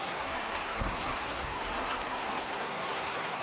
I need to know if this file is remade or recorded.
remade